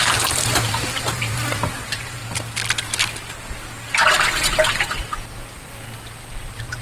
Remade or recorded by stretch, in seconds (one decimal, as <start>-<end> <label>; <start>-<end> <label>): 0.0-2.2 remade; 2.2-6.3 recorded; 6.3-6.8 remade